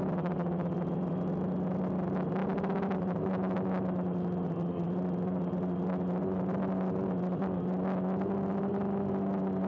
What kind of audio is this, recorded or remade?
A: recorded